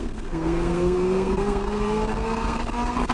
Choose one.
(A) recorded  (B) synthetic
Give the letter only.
B